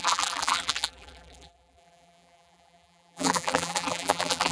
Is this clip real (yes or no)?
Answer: no